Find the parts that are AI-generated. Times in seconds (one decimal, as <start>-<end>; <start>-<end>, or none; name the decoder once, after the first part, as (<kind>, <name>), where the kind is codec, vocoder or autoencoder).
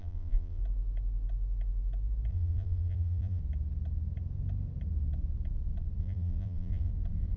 0.0-0.6 (vocoder, BigVGAN v2); 2.3-3.4; 6.0-6.9